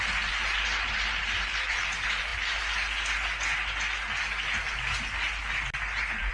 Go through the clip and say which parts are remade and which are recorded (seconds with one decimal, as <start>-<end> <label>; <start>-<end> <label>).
0.0-6.3 recorded